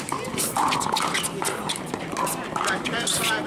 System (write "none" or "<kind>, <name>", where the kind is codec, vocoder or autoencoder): none